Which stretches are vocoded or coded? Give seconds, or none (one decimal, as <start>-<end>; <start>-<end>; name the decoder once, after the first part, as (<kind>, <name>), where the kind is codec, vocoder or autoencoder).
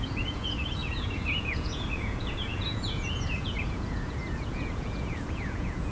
0.0-5.9 (vocoder, Vocos)